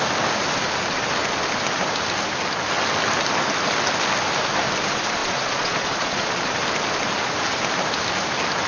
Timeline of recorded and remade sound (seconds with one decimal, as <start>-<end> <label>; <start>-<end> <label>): 0.0-5.2 recorded; 5.2-6.5 remade; 6.5-8.7 recorded